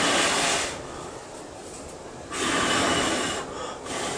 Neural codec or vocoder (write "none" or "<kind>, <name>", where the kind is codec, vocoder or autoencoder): none